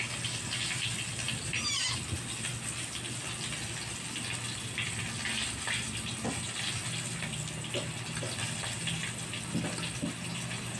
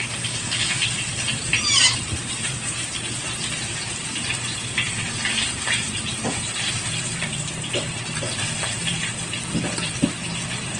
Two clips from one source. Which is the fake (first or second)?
second